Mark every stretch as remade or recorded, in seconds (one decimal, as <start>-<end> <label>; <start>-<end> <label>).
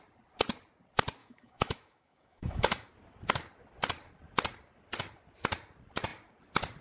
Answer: 0.0-1.2 recorded; 1.2-2.9 remade; 2.9-6.8 recorded